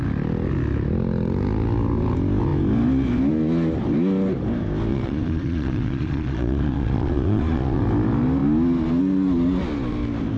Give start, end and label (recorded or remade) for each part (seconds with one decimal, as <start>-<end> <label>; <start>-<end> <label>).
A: 0.0-4.9 recorded; 4.9-7.8 remade; 7.8-10.4 recorded